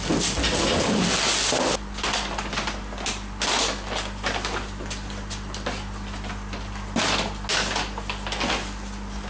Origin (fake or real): real